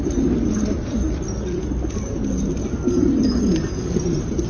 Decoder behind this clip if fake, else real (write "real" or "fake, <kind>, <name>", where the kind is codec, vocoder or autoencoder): real